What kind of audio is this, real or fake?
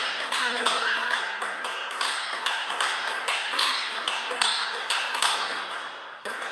fake